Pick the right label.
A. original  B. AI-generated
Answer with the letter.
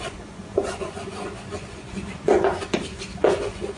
B